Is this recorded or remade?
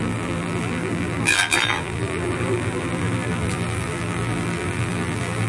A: remade